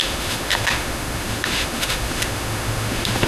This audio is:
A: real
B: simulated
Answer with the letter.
B